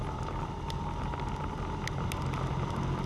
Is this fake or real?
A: real